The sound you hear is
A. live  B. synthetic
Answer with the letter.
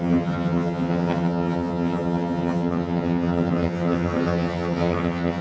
B